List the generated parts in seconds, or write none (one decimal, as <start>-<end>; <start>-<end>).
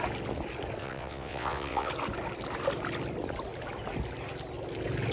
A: 0.8-1.9